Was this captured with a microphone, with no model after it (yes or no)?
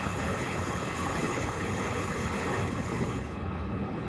no